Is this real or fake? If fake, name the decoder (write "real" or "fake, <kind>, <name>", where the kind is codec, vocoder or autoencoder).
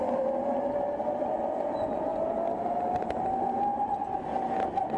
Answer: real